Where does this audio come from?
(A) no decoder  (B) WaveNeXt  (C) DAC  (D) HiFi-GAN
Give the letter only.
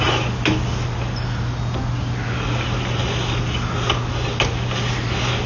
A